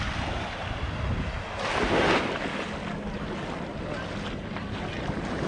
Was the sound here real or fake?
real